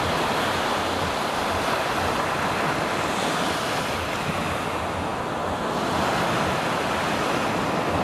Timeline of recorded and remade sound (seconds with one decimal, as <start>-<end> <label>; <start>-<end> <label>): 0.0-8.0 recorded

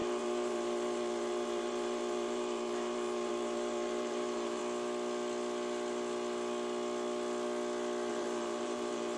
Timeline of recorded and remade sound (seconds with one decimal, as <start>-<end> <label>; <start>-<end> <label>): 0.0-4.6 remade; 4.6-8.1 recorded; 8.1-9.2 remade

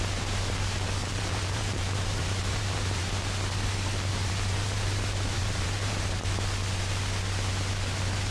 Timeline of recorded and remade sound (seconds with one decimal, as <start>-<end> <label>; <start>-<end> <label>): 0.0-1.0 recorded; 1.0-3.1 remade; 3.1-4.1 recorded; 4.1-6.3 remade; 6.3-8.3 recorded

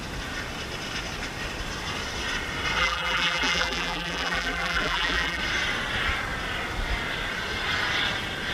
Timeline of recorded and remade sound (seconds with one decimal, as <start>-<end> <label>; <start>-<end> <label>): 0.0-2.8 recorded; 2.8-5.4 remade; 5.4-8.5 recorded